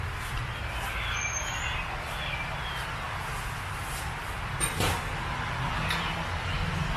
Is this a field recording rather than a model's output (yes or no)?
yes